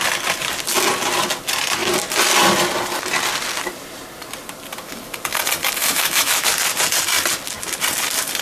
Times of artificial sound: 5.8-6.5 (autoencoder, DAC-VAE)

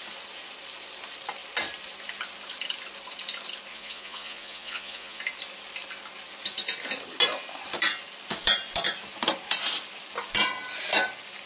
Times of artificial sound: 3.7-5.2 (vocoder, Vocos)

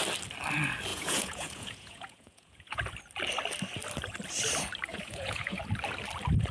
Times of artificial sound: 0.9-2.8 (vocoder, Vocos); 4.9-5.6

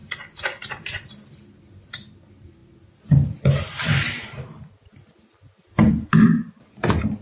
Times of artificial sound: none

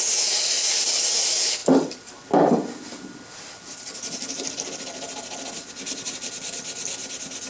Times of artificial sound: none

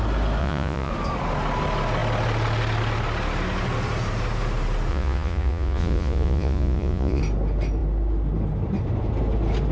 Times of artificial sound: 0.4-0.9 (vocoder, Vocos); 4.9-7.2

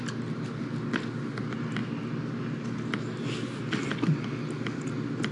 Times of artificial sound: none